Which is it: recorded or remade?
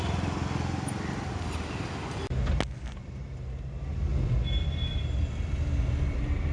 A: recorded